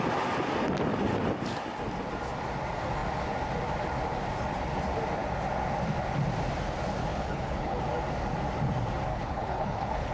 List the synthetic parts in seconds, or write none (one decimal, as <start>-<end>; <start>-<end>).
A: 7.1-7.8; 9.1-10.1